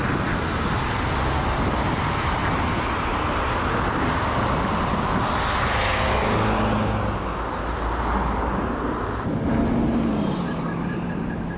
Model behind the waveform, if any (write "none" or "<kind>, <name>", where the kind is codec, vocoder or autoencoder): none